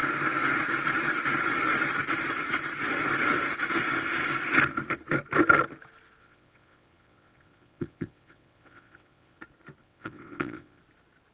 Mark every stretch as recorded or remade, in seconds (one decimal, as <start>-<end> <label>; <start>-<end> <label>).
0.0-6.2 recorded; 6.2-9.4 remade; 9.4-9.8 recorded; 9.8-10.8 remade; 10.8-11.3 recorded